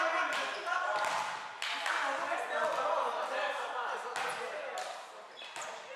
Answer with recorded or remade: recorded